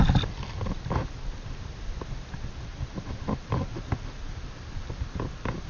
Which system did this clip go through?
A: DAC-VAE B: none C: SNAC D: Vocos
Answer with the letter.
B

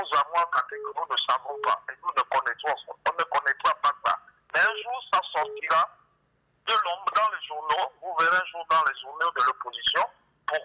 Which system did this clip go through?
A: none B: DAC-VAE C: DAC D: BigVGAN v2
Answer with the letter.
A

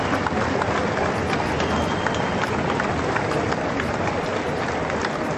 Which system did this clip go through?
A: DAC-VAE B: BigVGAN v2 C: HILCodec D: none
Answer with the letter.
D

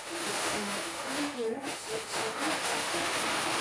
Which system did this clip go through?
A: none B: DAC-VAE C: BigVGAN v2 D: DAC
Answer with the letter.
B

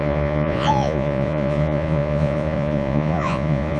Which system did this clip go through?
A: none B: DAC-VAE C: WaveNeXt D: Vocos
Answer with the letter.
D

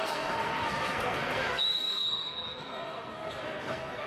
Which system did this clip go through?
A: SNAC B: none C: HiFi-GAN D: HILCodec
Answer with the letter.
A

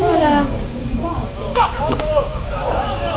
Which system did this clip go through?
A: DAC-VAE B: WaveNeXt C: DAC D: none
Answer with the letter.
C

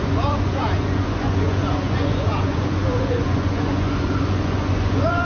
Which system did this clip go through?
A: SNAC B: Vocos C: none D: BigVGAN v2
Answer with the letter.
B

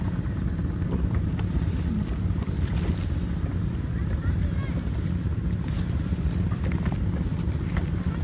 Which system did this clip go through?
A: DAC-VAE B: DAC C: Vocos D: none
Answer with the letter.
D